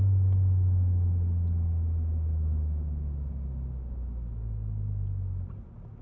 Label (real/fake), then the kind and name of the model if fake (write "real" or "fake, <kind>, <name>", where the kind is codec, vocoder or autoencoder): real